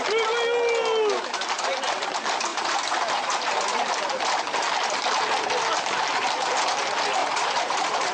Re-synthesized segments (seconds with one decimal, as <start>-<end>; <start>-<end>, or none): 2.5-3.9; 7.2-8.1